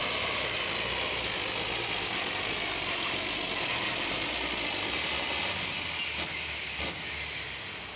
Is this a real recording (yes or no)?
yes